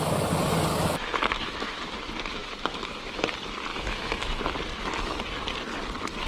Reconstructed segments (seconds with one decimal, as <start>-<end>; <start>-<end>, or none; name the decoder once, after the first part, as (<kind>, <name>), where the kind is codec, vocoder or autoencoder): 0.7-1.8 (autoencoder, DAC-VAE); 2.4-3.2; 3.7-4.4